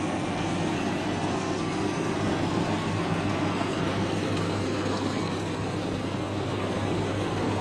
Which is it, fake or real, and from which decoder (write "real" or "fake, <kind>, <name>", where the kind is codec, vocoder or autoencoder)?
fake, codec, SNAC